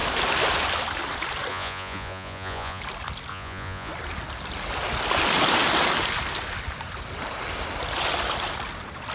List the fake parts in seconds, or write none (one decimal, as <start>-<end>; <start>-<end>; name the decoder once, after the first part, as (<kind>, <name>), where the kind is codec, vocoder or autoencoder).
1.5-2.8 (vocoder, Vocos); 3.3-3.9